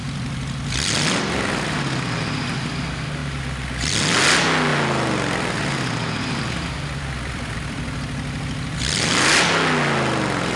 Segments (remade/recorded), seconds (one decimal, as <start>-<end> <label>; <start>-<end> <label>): 0.0-1.6 remade; 1.6-3.2 recorded; 3.2-4.0 remade; 4.0-4.7 recorded; 4.7-9.1 remade; 9.1-10.6 recorded